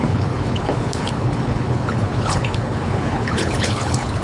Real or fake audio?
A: fake